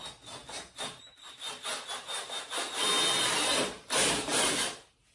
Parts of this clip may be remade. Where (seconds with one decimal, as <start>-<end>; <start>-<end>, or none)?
none